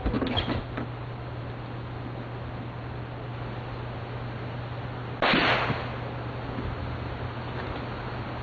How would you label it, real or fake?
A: real